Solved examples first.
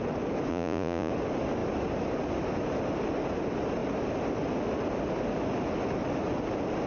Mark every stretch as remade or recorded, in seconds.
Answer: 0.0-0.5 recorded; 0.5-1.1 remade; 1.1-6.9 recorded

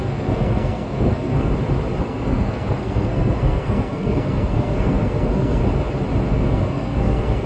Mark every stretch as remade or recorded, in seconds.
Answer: 0.0-1.5 remade; 1.5-2.0 recorded; 2.0-5.6 remade; 5.6-6.3 recorded; 6.3-7.5 remade

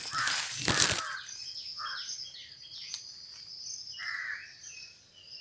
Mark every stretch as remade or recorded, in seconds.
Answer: 0.0-5.4 recorded

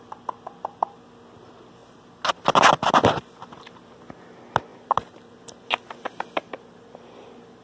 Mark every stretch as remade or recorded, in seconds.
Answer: 0.0-7.6 recorded

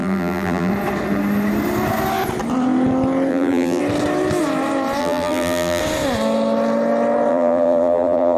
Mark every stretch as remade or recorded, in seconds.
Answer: 0.0-0.7 remade; 0.7-3.3 recorded; 3.3-3.8 remade; 3.8-5.0 recorded; 5.0-5.8 remade; 5.8-7.3 recorded; 7.3-8.4 remade

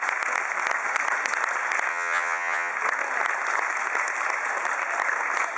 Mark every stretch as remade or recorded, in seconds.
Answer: 0.0-1.9 recorded; 1.9-2.7 remade; 2.7-5.6 recorded

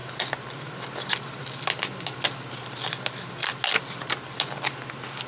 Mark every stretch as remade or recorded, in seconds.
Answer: 0.0-5.3 recorded